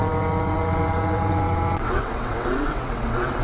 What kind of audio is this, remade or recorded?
remade